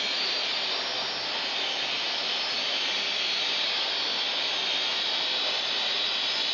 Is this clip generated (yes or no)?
no